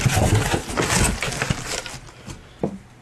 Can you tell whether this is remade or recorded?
recorded